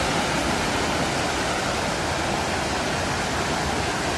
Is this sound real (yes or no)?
yes